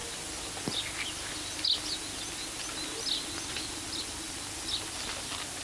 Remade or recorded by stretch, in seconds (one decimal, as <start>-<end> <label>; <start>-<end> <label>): 0.0-5.6 recorded